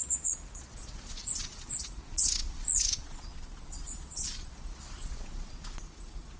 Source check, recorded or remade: remade